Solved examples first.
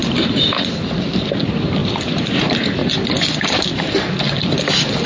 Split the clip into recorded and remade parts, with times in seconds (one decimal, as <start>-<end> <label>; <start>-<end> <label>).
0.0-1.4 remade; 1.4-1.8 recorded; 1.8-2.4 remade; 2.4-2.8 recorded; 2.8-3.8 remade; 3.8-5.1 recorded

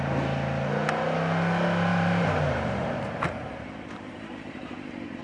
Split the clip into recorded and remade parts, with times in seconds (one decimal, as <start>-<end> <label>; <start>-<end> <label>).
0.0-1.9 recorded; 1.9-5.2 remade

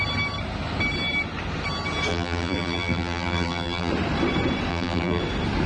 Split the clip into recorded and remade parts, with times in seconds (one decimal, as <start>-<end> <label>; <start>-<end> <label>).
0.0-2.1 recorded; 2.1-3.9 remade; 3.9-4.7 recorded; 4.7-5.2 remade; 5.2-5.7 recorded

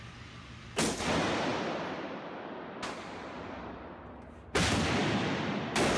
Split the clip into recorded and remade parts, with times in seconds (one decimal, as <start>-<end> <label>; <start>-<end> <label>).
0.0-6.0 recorded